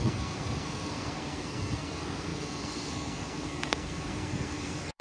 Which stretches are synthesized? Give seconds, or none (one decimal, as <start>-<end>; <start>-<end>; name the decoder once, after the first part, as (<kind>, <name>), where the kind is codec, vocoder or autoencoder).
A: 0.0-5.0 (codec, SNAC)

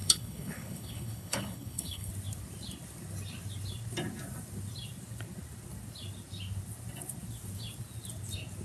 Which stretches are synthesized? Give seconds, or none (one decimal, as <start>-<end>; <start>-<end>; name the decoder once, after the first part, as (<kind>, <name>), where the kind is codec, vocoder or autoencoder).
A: 0.0-2.1 (codec, HILCodec)

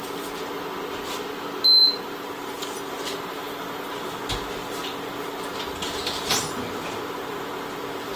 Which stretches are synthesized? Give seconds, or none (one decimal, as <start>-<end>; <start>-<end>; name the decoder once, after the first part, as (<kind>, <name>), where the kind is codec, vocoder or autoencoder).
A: none

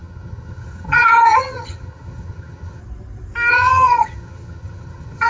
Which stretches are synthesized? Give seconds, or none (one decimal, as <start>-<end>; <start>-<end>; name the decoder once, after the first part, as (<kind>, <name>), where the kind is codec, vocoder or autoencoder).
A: 0.0-2.8 (vocoder, HiFi-GAN); 3.5-5.3

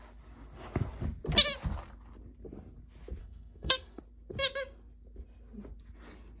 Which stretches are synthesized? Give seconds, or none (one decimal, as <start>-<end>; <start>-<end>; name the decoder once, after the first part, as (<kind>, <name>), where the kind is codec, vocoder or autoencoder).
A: 3.2-4.0 (codec, SNAC)

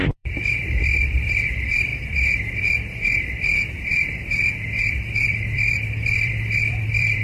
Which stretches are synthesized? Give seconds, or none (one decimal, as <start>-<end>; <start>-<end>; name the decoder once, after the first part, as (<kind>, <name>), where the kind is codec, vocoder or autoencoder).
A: 0.0-1.9 (vocoder, BigVGAN v2); 4.9-7.2